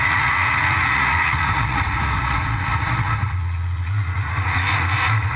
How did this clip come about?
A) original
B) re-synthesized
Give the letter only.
B